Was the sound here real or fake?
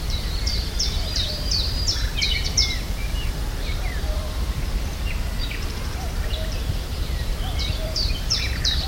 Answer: fake